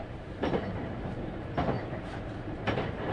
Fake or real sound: fake